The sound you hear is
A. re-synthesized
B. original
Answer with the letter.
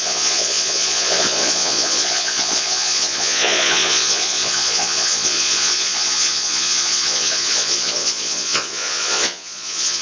A